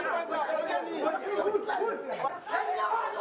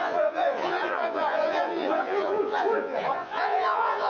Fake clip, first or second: second